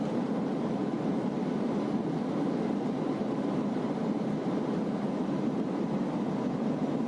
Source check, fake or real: fake